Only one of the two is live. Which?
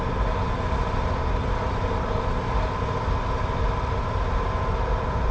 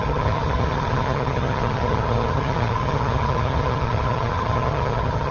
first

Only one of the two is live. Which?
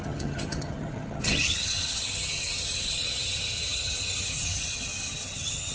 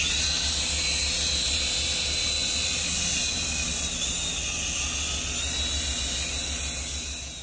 second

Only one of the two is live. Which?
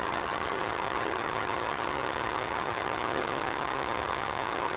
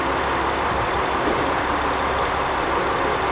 second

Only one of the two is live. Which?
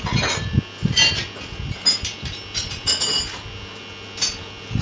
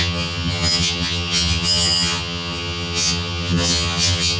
first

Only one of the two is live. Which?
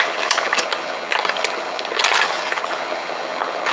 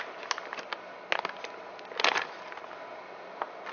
second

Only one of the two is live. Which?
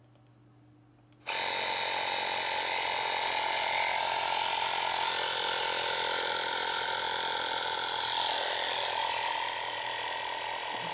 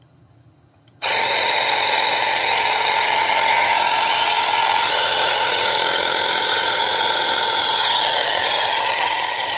first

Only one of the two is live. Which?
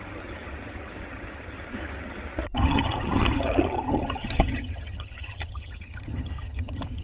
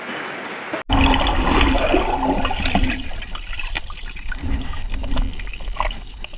second